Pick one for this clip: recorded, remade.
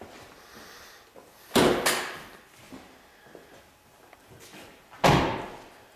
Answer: recorded